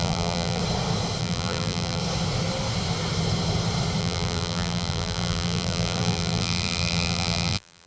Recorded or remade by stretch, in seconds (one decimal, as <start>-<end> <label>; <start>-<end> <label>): 0.0-0.6 remade; 0.6-1.2 recorded; 1.2-2.0 remade; 2.0-4.0 recorded; 4.0-7.9 remade